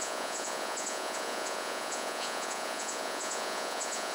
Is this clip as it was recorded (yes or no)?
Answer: no